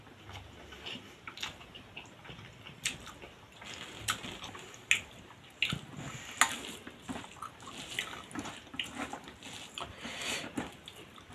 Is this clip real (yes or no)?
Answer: yes